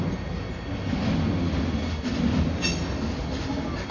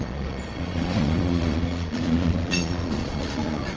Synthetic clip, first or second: second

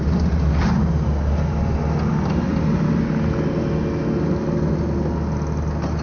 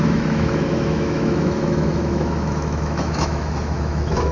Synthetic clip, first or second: second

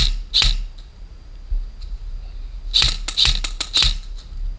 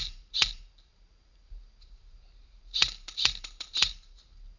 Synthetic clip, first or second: second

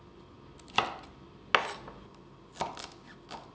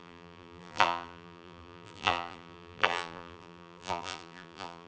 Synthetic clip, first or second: second